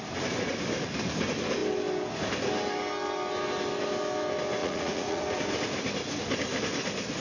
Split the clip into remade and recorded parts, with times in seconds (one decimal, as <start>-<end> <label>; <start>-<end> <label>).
0.0-4.6 recorded; 4.6-5.2 remade; 5.2-7.2 recorded